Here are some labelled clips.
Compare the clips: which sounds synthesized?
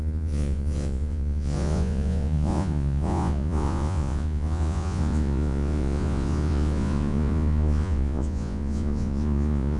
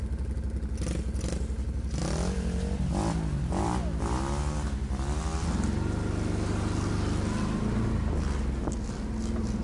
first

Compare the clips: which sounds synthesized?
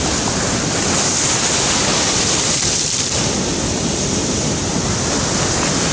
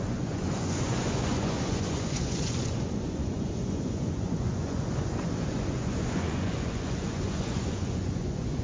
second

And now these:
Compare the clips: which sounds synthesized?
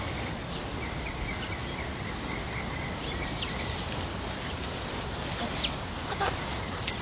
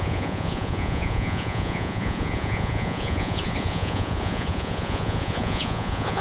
second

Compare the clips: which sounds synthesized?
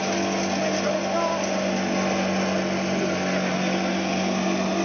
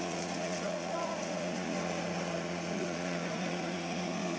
second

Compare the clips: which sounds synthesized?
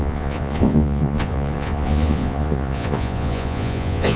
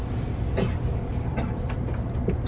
first